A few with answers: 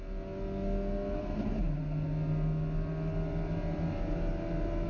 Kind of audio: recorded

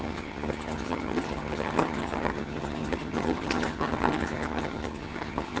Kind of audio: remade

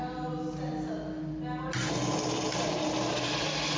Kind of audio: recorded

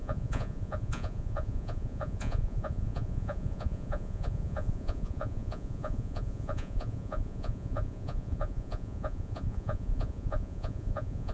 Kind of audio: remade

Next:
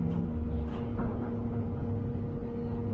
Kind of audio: recorded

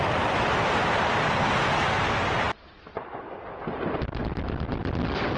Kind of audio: recorded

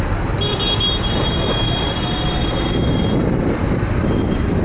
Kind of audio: recorded